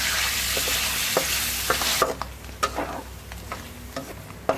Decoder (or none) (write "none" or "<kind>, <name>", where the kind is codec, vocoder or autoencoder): none